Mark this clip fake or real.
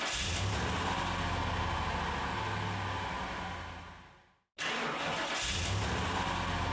real